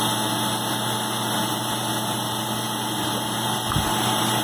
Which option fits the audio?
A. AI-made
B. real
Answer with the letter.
B